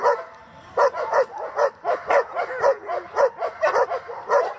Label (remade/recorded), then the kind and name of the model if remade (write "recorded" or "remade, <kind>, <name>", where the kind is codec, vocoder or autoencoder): recorded